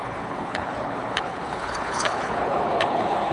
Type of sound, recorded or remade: remade